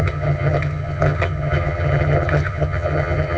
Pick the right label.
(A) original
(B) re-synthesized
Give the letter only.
B